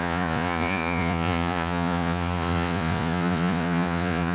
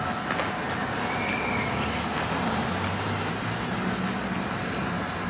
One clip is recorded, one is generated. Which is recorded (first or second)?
second